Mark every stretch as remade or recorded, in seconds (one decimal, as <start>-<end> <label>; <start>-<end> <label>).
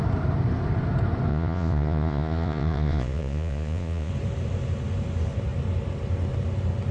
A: 0.0-1.3 recorded; 1.3-4.1 remade; 4.1-6.9 recorded